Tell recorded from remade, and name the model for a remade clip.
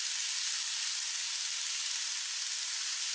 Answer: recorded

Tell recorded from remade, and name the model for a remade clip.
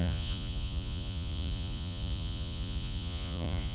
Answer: remade, vocoder, Vocos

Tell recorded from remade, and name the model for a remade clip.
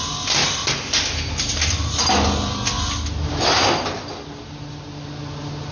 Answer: recorded